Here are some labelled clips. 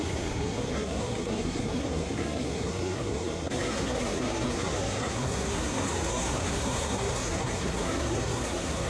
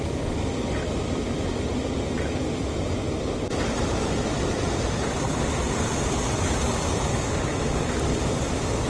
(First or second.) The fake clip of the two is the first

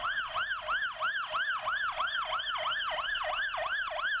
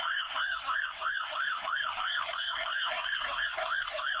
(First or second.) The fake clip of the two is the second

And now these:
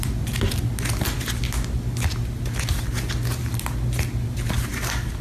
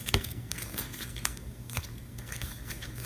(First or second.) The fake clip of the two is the second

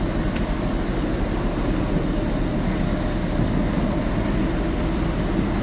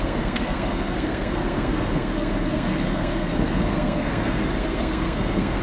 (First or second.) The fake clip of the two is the second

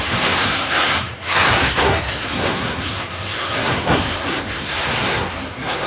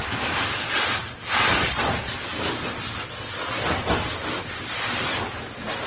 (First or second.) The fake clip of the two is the first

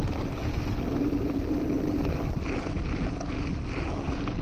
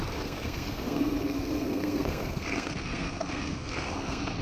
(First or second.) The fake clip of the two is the second